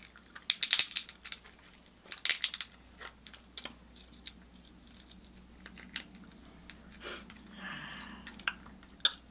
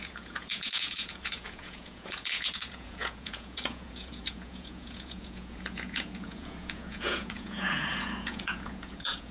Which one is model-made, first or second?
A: second